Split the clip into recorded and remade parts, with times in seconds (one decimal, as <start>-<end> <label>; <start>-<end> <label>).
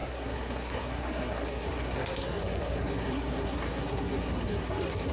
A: 0.0-5.1 remade